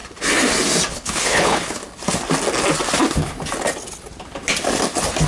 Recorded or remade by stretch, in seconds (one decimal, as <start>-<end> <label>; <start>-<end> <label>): 0.0-0.9 recorded; 0.9-1.8 remade; 1.8-5.3 recorded